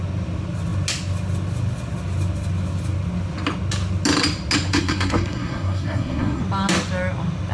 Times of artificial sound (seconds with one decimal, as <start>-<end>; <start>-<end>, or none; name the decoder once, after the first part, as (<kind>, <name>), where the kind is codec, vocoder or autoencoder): 4.7-6.4 (codec, SNAC)

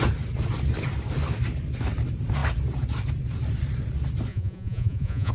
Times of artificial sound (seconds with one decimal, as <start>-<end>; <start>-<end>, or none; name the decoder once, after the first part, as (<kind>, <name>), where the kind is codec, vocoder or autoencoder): 4.3-5.3 (vocoder, Vocos)

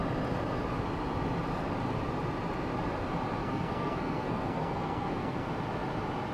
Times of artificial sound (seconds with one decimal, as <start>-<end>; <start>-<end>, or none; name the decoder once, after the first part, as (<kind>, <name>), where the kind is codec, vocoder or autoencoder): 3.4-5.5 (codec, SNAC)